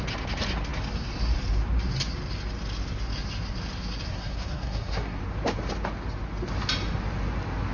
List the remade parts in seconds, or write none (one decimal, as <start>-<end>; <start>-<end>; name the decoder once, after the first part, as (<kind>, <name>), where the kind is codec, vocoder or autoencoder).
4.1-5.2 (codec, SNAC)